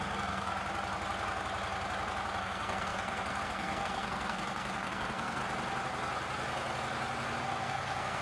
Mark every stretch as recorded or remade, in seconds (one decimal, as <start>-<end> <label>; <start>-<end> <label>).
0.0-0.5 remade; 0.5-2.4 recorded; 2.4-5.4 remade; 5.4-7.4 recorded; 7.4-8.2 remade